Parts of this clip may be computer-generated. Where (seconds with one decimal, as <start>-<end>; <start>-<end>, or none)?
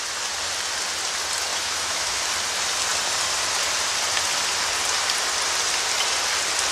1.5-2.2